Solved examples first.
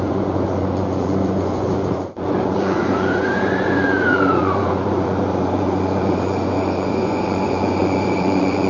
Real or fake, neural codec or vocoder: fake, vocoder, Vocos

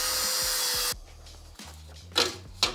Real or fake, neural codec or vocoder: real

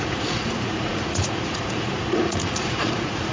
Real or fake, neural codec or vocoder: fake, vocoder, Vocos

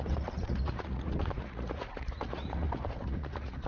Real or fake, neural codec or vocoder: fake, vocoder, Vocos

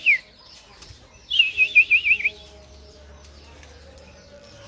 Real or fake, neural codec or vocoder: real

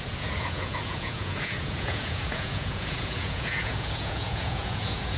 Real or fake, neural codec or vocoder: fake, vocoder, Vocos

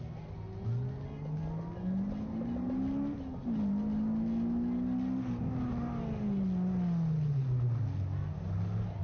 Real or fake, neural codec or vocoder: real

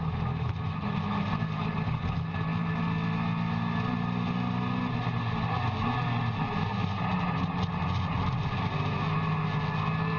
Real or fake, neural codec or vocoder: real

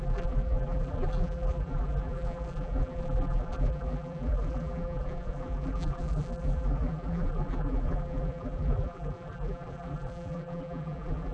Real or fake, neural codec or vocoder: fake, vocoder, BigVGAN v2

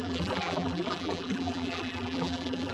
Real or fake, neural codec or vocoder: fake, vocoder, BigVGAN v2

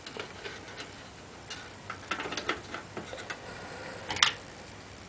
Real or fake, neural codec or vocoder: real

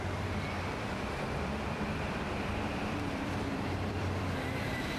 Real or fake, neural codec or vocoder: fake, vocoder, BigVGAN v2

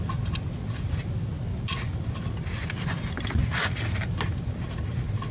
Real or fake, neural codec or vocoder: real